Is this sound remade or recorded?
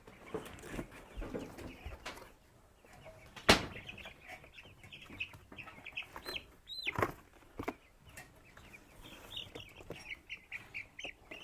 recorded